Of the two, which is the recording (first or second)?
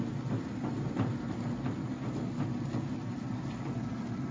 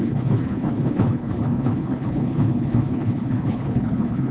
first